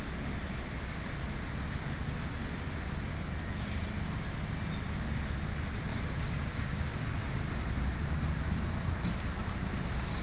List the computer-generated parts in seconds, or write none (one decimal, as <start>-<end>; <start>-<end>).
5.9-7.1